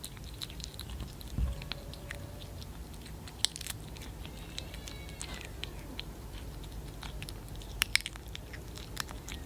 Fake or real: real